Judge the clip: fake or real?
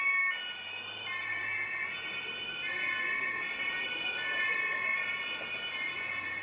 real